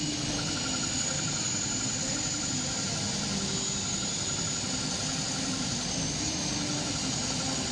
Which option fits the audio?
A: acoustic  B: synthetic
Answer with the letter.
A